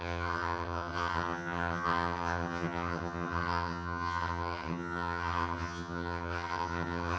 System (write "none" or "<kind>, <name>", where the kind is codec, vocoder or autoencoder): vocoder, HiFi-GAN